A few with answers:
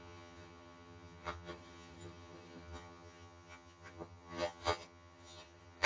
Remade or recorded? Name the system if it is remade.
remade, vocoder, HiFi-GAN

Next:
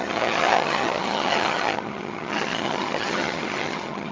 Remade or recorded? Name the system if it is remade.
remade, vocoder, HiFi-GAN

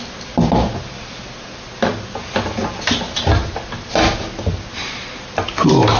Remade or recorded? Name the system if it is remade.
recorded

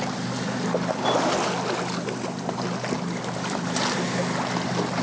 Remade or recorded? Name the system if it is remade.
recorded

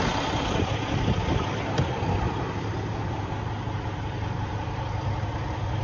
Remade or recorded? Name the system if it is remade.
recorded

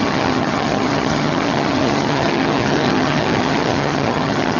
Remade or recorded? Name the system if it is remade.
remade, vocoder, HiFi-GAN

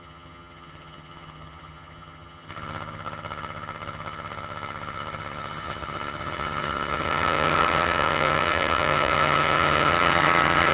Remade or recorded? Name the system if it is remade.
remade, vocoder, HiFi-GAN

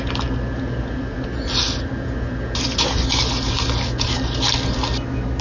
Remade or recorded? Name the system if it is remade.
recorded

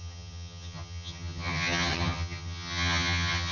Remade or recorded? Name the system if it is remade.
remade, vocoder, HiFi-GAN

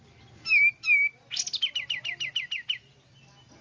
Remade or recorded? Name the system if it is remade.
recorded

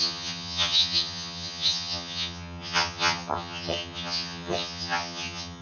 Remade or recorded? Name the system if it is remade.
remade, vocoder, HiFi-GAN